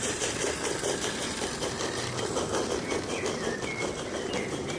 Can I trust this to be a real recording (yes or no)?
yes